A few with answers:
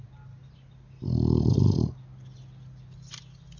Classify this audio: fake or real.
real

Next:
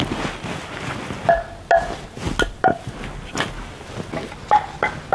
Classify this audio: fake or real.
real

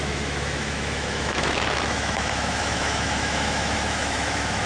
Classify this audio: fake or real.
fake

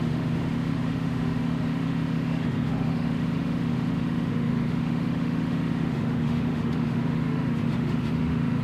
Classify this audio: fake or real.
fake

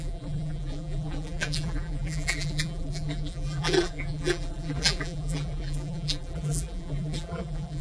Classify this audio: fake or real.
fake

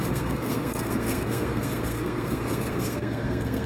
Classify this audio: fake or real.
fake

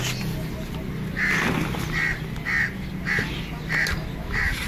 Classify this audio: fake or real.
real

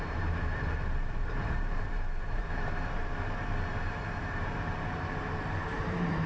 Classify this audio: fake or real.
fake